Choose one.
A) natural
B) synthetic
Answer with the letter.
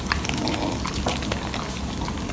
A